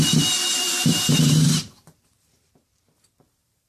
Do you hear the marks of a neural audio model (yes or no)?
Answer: yes